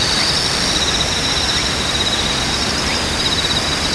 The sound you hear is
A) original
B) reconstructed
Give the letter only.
A